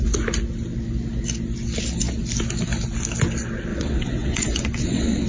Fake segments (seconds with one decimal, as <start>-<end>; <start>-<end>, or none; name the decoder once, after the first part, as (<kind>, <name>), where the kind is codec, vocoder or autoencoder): 3.7-5.3 (vocoder, WaveNeXt)